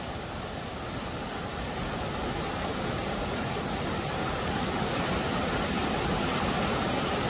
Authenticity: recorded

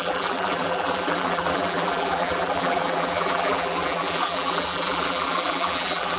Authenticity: remade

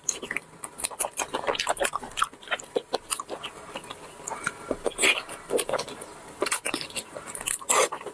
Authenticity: recorded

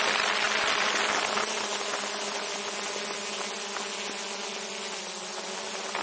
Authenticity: recorded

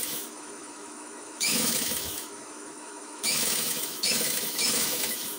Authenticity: remade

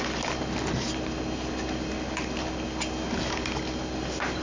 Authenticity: recorded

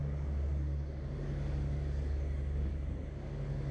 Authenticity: remade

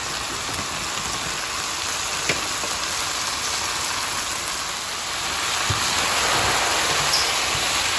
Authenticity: recorded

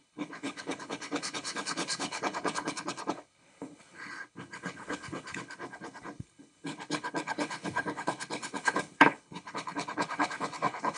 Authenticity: remade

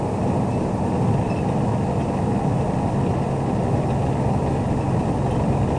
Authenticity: recorded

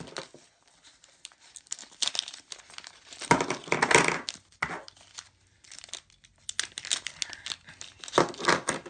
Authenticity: recorded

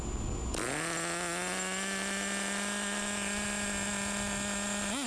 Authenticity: recorded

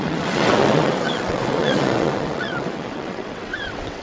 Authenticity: remade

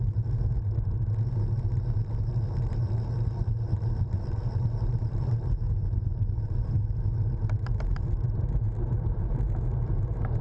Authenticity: remade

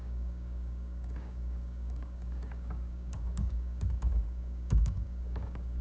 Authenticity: remade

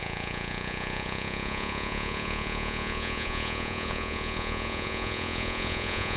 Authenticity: remade